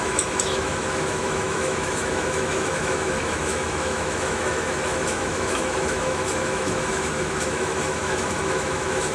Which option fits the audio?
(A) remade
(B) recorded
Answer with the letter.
A